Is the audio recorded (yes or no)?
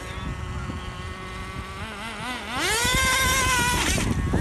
yes